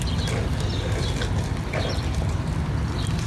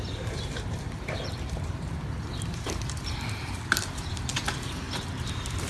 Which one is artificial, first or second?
second